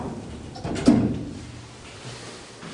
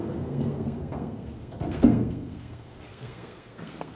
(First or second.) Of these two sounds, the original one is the first